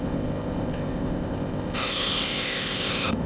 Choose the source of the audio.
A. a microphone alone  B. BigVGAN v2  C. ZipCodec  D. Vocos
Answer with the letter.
C